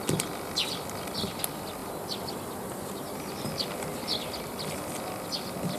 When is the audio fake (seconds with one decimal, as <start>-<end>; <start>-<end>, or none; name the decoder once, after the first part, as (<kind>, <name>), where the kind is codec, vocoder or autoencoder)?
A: none